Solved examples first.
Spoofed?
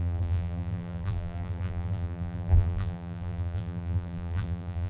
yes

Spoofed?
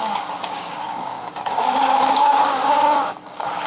yes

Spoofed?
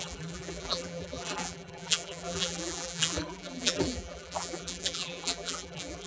yes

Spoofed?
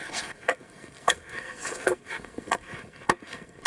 yes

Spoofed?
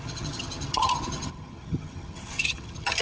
yes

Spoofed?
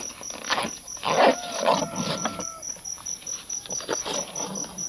no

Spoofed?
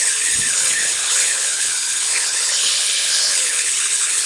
yes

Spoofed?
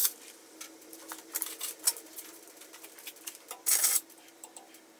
yes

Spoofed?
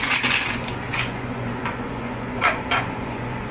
yes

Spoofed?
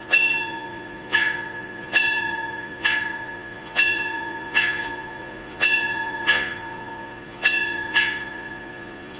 yes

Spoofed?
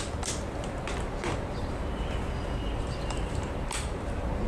no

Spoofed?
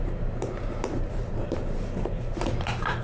yes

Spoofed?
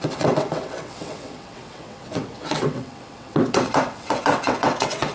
yes